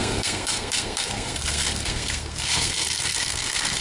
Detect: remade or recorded remade